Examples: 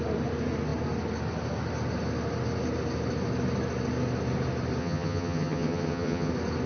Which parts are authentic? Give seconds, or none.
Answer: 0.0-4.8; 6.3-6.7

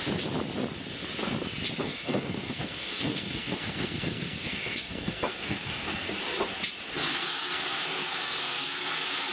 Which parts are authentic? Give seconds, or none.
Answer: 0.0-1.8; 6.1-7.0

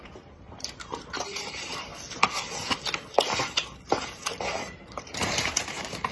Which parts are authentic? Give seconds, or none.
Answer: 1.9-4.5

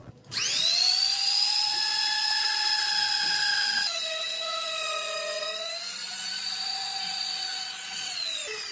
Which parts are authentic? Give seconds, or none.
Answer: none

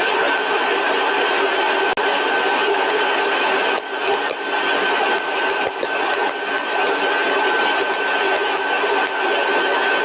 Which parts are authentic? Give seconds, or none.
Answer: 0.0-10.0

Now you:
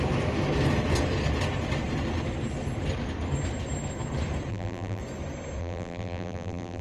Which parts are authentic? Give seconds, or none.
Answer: 0.0-4.5; 5.0-5.6

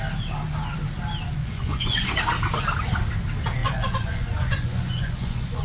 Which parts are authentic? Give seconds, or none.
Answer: 0.0-1.4; 2.1-3.6

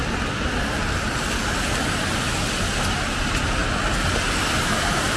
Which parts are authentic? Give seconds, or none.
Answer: 0.0-3.1; 3.6-4.5